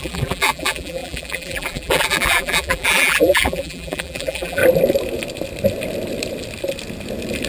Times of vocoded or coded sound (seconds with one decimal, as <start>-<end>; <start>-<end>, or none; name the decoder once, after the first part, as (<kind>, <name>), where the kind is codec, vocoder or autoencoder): 0.0-4.6 (vocoder, BigVGAN v2)